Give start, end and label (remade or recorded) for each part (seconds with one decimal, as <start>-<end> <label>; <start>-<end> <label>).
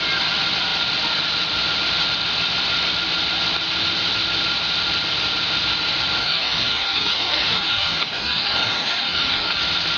0.0-6.2 recorded; 6.2-9.6 remade; 9.6-10.0 recorded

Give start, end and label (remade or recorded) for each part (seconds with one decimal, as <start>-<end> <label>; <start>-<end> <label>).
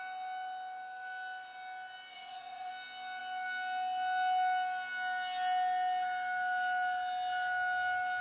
0.0-2.1 recorded; 2.1-2.7 remade; 2.7-8.2 recorded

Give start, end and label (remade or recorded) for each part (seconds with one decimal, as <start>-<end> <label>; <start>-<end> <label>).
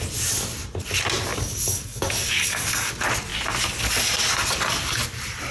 0.0-1.3 recorded; 1.3-2.9 remade; 2.9-5.5 recorded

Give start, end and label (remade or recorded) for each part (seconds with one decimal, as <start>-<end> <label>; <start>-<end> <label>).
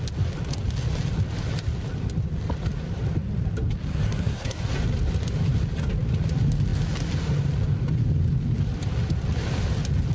0.0-3.9 recorded; 3.9-4.6 remade; 4.6-10.1 recorded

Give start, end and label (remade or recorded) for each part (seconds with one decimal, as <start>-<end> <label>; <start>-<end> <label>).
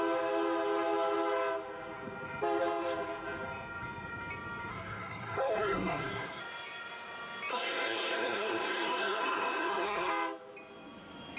0.0-4.7 recorded; 4.7-6.4 remade; 6.4-7.5 recorded; 7.5-10.1 remade; 10.1-11.4 recorded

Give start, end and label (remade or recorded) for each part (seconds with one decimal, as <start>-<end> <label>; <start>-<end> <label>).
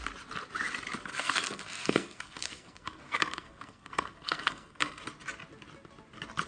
0.0-1.1 recorded; 1.1-5.0 remade; 5.0-6.5 recorded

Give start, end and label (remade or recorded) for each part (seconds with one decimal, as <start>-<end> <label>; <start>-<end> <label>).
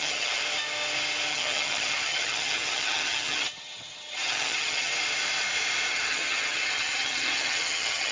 0.0-0.4 remade; 0.4-1.3 recorded; 1.3-4.9 remade; 4.9-5.9 recorded; 5.9-8.1 remade